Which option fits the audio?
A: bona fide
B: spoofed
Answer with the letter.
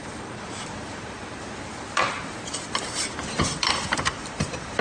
B